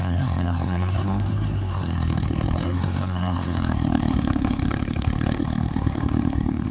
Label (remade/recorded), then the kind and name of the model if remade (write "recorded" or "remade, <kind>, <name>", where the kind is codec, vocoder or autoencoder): remade, codec, SNAC